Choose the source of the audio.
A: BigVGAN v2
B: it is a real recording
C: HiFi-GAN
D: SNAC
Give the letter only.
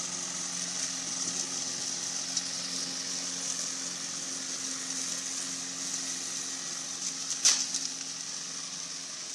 B